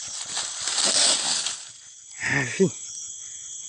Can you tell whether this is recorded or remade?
recorded